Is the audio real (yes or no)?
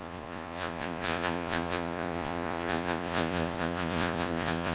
no